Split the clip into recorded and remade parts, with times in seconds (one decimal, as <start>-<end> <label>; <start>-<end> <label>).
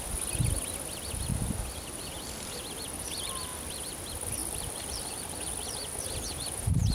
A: 0.0-1.3 recorded; 1.3-3.7 remade; 3.7-4.4 recorded; 4.4-5.5 remade; 5.5-6.9 recorded